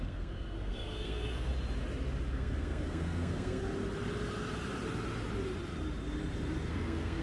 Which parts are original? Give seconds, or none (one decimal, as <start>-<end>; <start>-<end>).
1.5-2.3; 3.6-6.7